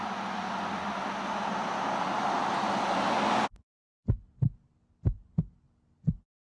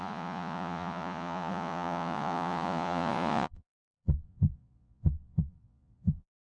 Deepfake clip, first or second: second